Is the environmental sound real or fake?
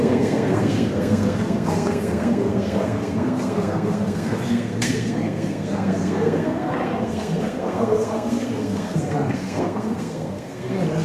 fake